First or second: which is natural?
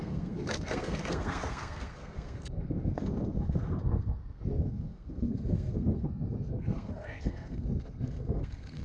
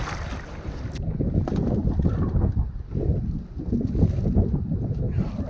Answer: second